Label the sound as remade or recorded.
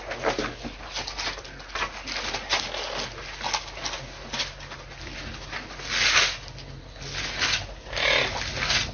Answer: recorded